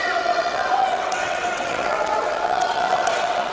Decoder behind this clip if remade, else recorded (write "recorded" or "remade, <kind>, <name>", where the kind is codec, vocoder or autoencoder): remade, vocoder, WaveNeXt